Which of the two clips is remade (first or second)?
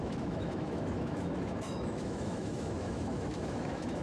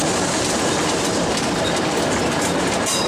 first